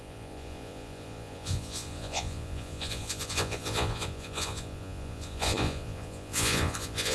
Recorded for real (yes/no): no